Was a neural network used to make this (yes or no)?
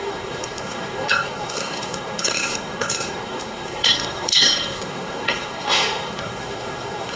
yes